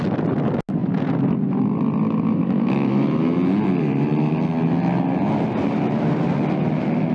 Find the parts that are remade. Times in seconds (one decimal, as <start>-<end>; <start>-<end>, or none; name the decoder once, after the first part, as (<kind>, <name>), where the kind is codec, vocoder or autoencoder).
none